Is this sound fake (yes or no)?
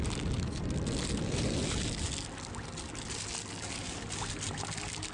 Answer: no